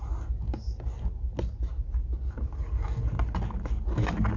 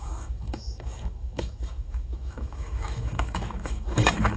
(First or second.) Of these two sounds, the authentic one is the first